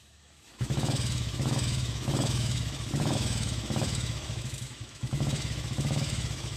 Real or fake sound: fake